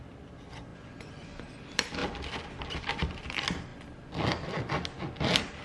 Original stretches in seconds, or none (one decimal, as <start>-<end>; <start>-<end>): 0.0-0.7; 1.4-5.6